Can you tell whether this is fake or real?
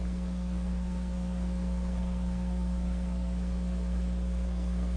fake